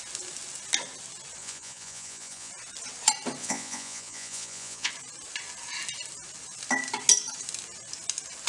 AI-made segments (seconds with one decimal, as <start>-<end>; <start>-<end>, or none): 1.4-2.5; 3.4-4.9